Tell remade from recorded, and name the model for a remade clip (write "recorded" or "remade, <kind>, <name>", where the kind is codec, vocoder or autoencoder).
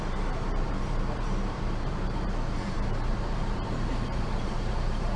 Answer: remade, vocoder, BigVGAN v2